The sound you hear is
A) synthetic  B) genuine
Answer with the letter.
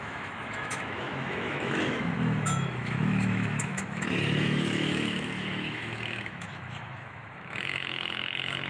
A